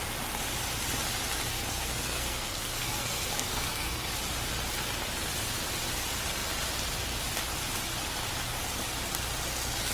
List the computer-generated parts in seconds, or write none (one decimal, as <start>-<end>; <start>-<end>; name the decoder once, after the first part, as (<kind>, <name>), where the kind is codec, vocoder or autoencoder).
1.5-4.1 (codec, SNAC)